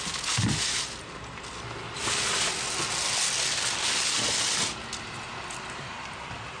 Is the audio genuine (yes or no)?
yes